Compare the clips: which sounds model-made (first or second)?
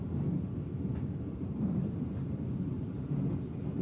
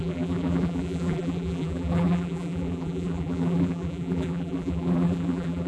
second